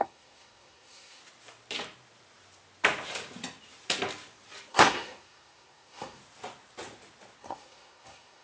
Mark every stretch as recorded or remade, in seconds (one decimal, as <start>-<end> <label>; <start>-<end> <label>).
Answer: 0.0-1.2 remade; 1.2-4.7 recorded; 4.7-6.2 remade; 6.2-7.4 recorded; 7.4-8.4 remade